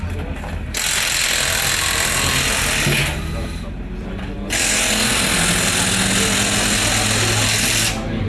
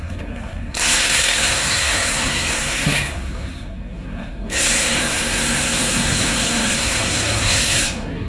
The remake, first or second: second